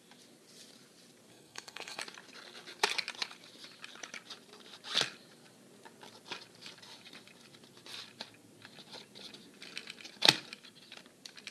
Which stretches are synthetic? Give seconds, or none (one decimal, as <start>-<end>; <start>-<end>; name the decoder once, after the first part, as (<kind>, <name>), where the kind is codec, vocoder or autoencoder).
1.3-2.0 (codec, SNAC)